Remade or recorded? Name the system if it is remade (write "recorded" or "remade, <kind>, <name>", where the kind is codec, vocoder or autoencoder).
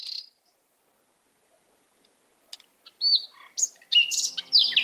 recorded